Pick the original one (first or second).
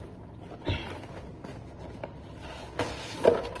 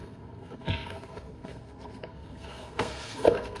first